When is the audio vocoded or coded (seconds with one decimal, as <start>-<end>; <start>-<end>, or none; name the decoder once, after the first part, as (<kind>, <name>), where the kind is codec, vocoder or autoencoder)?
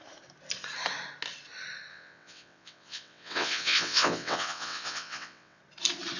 1.9-5.6 (vocoder, WaveNeXt)